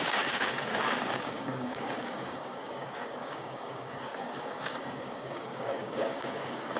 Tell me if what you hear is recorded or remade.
remade